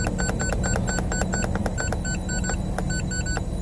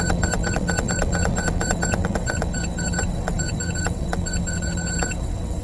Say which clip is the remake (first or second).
second